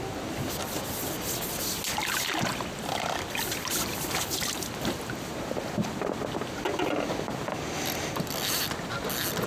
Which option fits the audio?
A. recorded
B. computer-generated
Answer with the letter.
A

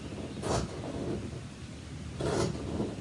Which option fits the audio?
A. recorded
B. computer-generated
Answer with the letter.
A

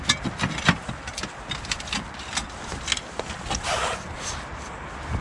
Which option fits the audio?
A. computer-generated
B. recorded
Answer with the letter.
B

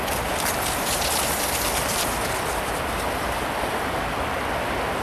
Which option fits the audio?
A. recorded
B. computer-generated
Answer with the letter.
A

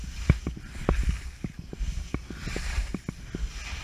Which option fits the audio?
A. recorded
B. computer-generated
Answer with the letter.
A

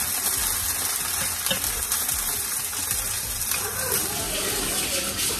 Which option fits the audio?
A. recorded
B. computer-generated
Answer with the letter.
A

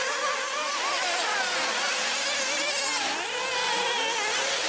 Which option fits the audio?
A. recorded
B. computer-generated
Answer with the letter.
A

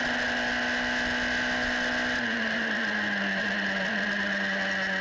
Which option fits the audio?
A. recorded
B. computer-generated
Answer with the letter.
A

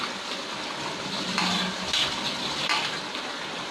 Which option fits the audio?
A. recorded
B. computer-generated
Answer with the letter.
A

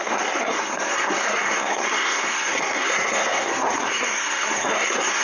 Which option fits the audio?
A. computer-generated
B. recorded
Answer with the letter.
A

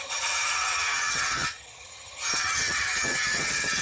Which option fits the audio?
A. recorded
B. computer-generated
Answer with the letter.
B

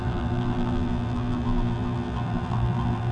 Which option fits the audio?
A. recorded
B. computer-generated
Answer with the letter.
B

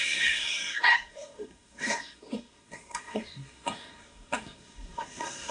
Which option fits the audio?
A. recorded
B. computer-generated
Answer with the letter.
B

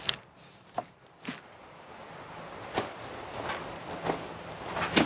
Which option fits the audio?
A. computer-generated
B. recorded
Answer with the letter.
B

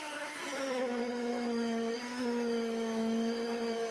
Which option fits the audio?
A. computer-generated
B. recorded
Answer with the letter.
A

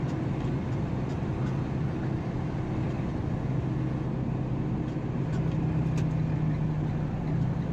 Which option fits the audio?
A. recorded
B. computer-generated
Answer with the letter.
A